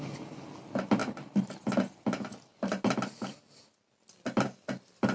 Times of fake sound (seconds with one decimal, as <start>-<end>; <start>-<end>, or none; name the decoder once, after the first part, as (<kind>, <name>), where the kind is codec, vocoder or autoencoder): none